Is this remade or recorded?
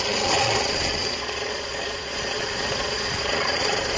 remade